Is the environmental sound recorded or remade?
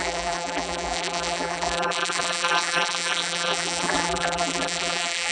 remade